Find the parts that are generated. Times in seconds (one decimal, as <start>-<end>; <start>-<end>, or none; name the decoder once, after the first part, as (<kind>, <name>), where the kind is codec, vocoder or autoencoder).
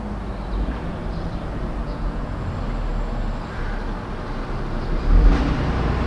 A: 1.8-2.4 (vocoder, Vocos)